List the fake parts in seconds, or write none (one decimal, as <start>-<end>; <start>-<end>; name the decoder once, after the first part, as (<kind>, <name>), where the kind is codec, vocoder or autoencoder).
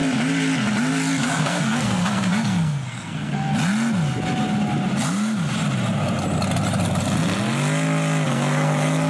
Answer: 1.2-3.5 (codec, SNAC); 8.3-9.1